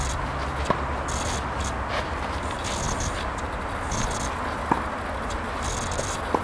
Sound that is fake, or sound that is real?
real